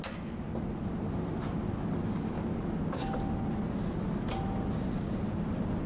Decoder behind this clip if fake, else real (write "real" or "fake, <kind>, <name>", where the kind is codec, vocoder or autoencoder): real